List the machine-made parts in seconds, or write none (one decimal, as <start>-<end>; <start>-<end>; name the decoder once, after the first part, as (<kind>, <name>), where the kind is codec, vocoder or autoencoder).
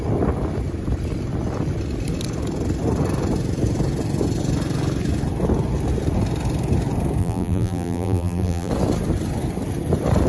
7.2-8.7 (vocoder, BigVGAN v2)